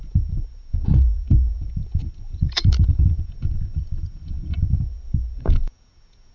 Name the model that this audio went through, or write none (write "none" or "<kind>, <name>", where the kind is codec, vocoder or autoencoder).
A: vocoder, Vocos